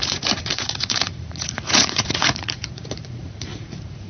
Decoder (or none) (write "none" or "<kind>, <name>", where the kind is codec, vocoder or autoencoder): vocoder, Vocos